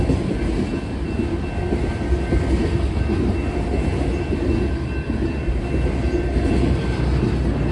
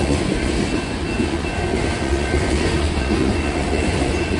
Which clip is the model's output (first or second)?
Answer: second